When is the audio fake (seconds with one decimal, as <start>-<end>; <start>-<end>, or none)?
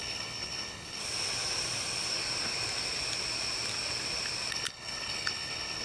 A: 0.0-1.0; 4.5-5.8